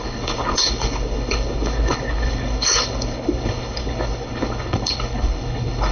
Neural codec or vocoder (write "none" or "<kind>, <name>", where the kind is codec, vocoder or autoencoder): codec, HILCodec